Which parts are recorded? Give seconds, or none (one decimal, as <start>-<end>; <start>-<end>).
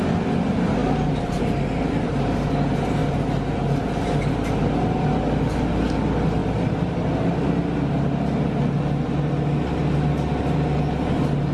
0.0-3.0; 3.8-11.5